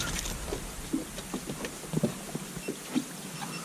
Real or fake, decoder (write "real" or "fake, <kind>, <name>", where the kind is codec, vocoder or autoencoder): real